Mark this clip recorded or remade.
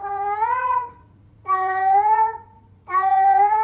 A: remade